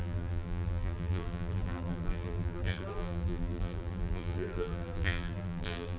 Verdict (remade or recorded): remade